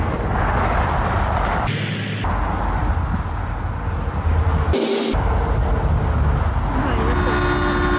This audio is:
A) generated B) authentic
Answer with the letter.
B